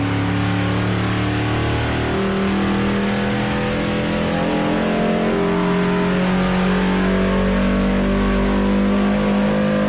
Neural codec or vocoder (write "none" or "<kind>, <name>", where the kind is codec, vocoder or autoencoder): none